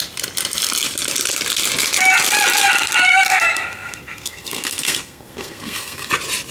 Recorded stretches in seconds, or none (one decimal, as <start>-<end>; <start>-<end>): 0.0-3.1; 6.1-6.5

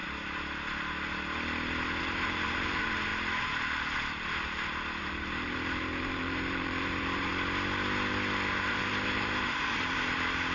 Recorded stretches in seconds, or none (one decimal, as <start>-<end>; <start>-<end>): 0.0-2.0; 3.1-5.0; 7.3-8.7